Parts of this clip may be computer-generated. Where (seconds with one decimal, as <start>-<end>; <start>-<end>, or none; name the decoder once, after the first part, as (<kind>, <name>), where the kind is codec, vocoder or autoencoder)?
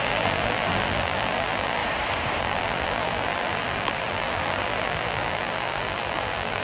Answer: 0.0-1.8 (vocoder, BigVGAN v2); 2.4-6.6